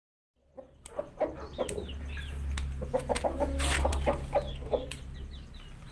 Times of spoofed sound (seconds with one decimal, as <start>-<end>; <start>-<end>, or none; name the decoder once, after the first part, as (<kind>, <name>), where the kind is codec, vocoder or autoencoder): 4.5-5.0 (codec, SNAC)